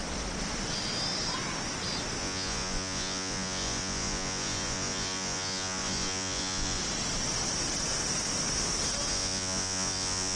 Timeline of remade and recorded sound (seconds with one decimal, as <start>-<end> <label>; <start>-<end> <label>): 0.0-2.2 recorded; 2.2-6.8 remade; 6.8-9.1 recorded; 9.1-10.4 remade